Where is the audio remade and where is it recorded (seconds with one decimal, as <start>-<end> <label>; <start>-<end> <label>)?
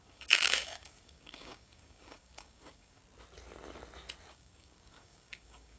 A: 0.0-3.0 remade; 3.0-4.3 recorded; 4.3-5.8 remade